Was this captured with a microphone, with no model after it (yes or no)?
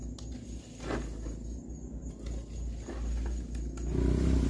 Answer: yes